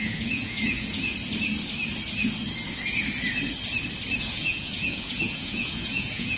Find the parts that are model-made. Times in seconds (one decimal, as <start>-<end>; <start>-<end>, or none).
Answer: 0.0-1.1; 4.2-6.4